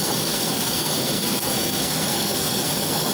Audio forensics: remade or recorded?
remade